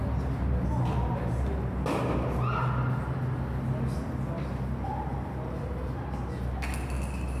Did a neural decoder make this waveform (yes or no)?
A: no